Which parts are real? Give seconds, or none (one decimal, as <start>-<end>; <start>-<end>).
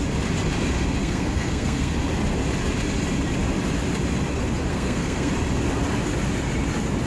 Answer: 0.0-1.0; 1.9-4.7; 5.3-7.1